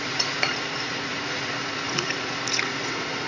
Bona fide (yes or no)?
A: no